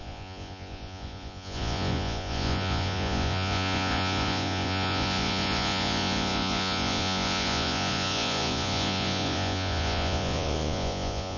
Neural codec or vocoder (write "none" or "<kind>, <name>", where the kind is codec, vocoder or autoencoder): vocoder, Vocos